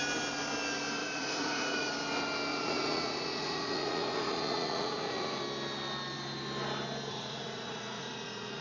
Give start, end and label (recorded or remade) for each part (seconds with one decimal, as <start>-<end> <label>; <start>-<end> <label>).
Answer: 0.0-1.0 recorded; 1.0-1.9 remade; 1.9-2.5 recorded; 2.5-5.4 remade; 5.4-7.1 recorded; 7.1-8.6 remade